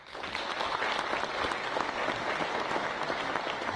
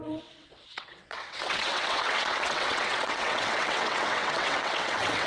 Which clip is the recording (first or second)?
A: first